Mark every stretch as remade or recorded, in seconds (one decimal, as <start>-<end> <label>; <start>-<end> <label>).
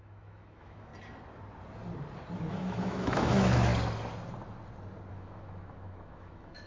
0.0-0.9 remade; 0.9-2.5 recorded; 2.5-3.7 remade; 3.7-5.1 recorded; 5.1-6.7 remade